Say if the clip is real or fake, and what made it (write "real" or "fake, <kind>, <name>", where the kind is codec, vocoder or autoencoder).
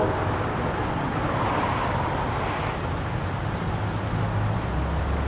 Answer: real